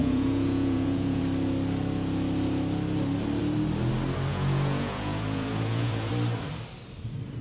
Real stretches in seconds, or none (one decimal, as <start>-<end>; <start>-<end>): 1.2-4.3; 6.1-7.4